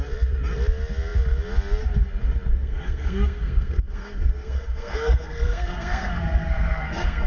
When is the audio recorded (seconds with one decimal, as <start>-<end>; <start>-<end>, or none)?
0.0-2.5